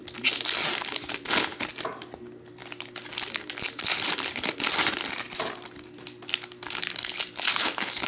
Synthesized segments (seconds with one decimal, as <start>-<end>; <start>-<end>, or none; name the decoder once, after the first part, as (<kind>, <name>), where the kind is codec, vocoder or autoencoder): none